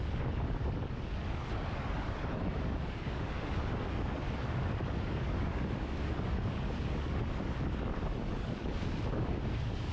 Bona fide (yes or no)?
no